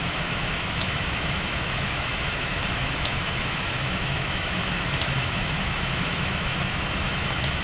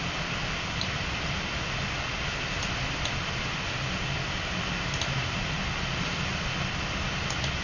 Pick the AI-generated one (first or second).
first